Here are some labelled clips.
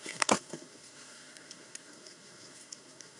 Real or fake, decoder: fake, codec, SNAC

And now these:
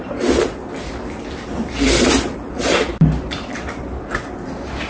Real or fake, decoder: real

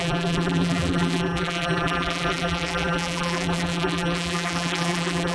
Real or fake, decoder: fake, vocoder, BigVGAN v2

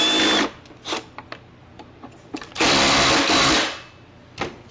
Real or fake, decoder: real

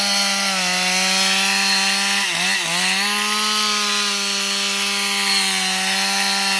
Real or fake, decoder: real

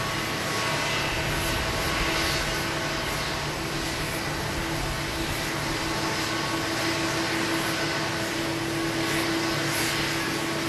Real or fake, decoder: real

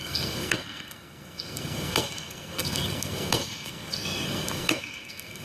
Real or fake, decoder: fake, codec, SNAC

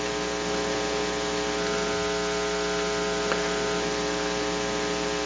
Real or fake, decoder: real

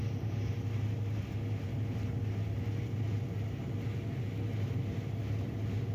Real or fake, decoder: real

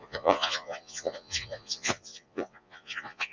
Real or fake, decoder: fake, vocoder, Vocos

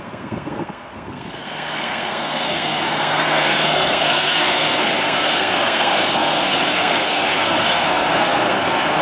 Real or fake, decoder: fake, codec, SNAC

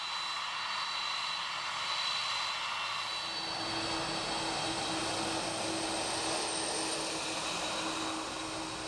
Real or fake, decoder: real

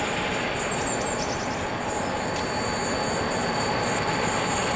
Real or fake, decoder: real